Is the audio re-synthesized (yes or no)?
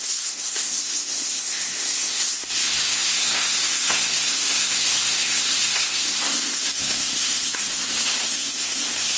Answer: yes